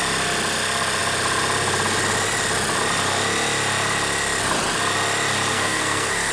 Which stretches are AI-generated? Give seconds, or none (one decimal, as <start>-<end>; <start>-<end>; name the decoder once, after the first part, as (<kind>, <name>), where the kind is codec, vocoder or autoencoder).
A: 5.5-6.3 (codec, SNAC)